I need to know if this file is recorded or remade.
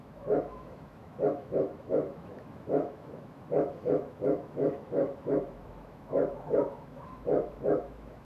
remade